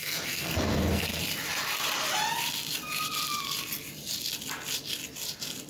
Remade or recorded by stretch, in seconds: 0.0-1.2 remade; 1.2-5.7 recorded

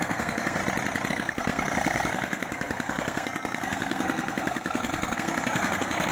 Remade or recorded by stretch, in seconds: 0.0-0.6 remade; 0.6-1.1 recorded; 1.1-6.1 remade

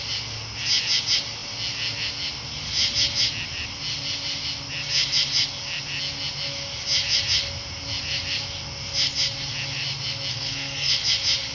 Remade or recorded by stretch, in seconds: 0.0-10.3 recorded; 10.3-10.9 remade; 10.9-11.5 recorded